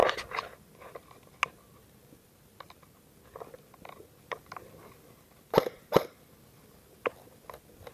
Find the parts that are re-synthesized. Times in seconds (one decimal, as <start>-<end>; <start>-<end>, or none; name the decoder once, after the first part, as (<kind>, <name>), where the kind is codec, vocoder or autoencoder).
none